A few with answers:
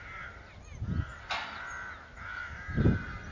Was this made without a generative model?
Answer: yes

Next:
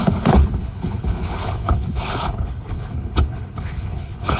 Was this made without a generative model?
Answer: no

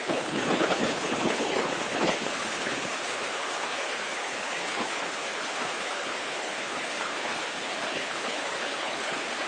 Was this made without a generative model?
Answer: no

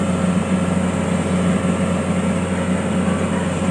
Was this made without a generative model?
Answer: yes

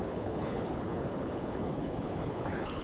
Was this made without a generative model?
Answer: no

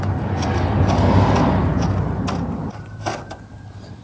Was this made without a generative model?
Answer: yes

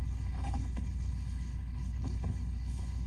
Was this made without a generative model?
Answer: no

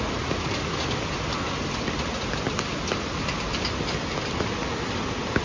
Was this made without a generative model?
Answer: yes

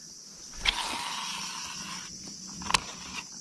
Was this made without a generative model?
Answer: yes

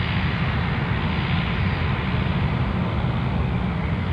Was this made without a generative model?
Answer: yes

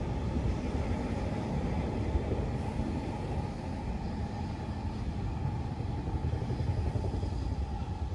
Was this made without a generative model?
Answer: yes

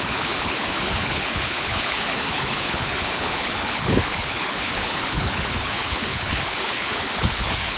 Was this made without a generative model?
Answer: no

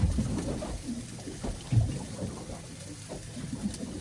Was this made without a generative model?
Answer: yes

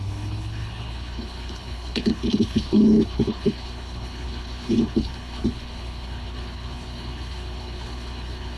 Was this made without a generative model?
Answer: no